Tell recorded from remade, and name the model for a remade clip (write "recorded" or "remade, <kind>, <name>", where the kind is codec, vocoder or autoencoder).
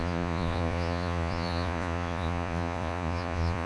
remade, vocoder, Vocos